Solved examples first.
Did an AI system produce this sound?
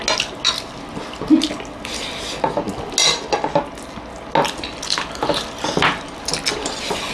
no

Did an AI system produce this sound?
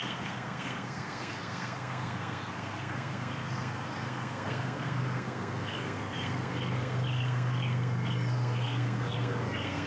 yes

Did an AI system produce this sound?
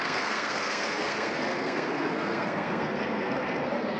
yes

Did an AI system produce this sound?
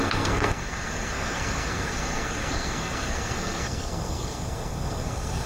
yes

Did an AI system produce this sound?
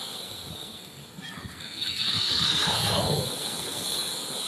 yes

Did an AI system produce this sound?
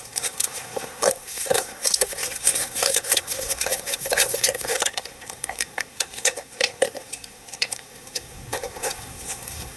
yes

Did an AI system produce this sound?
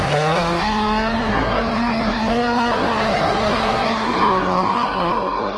yes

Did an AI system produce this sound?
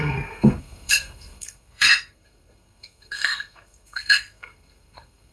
yes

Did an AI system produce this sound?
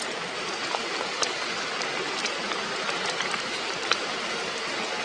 no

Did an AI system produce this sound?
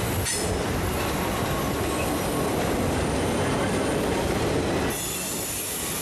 no